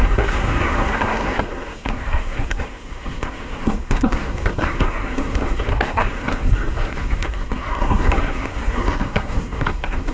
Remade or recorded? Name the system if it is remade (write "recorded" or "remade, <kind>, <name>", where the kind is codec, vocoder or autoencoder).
remade, codec, SNAC